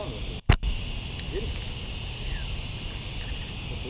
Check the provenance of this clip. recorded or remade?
recorded